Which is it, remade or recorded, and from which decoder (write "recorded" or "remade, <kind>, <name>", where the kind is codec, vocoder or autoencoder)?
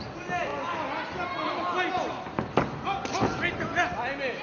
recorded